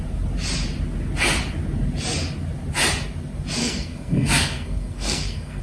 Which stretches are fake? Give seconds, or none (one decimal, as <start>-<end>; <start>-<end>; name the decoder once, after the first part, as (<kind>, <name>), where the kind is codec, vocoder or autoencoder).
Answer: 3.6-5.6 (codec, SNAC)